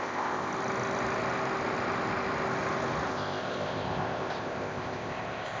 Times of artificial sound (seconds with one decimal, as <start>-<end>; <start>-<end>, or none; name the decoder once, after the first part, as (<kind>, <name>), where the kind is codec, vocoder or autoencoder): 0.0-0.5 (codec, ZipCodec); 3.1-5.6